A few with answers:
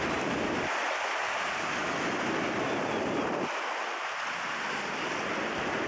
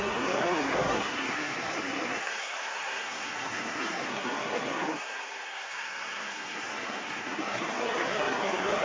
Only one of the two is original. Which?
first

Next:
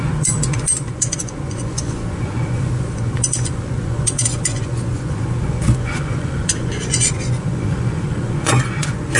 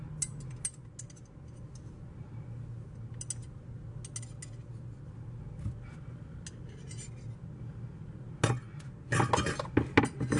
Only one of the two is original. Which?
second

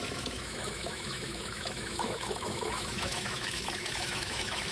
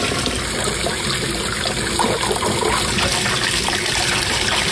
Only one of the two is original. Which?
second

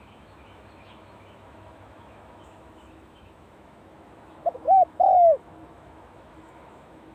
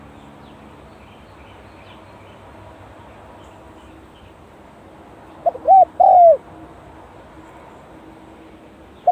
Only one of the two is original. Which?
second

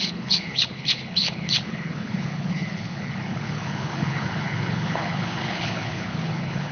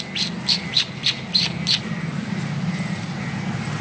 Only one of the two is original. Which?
second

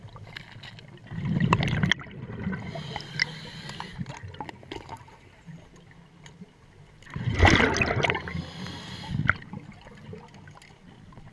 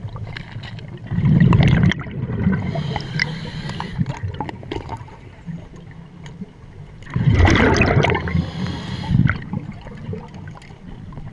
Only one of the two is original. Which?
first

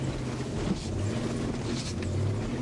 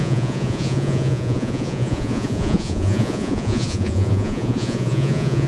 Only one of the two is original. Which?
first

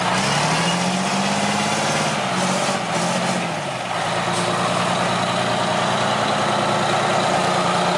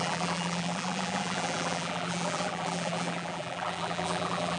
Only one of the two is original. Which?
first